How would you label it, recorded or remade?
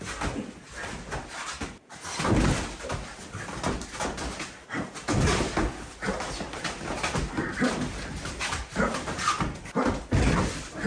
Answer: recorded